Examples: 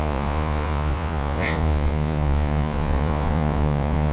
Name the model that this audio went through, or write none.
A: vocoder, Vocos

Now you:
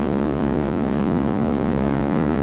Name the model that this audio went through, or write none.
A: vocoder, Vocos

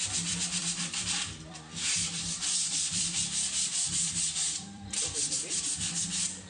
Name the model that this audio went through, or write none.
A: vocoder, BigVGAN v2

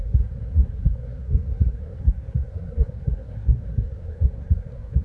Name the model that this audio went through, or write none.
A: codec, SNAC